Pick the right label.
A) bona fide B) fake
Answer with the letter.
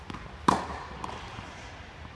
A